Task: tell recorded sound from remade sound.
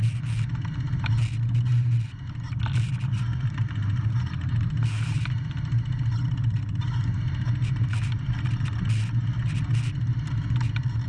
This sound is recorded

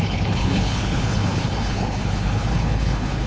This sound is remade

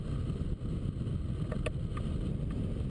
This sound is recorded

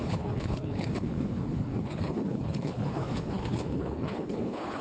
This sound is remade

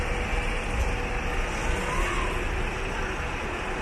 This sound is recorded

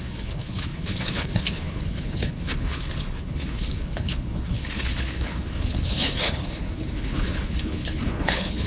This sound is remade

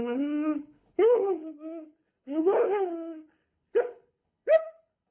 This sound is remade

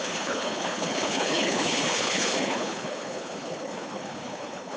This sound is remade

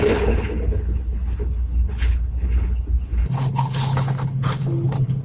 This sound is remade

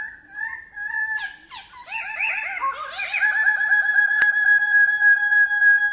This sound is recorded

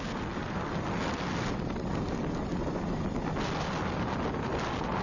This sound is recorded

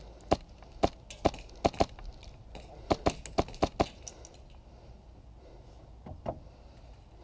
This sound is recorded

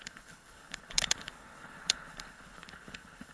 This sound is remade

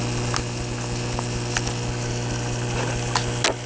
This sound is recorded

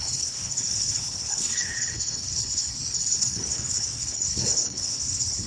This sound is remade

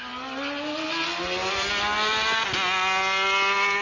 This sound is recorded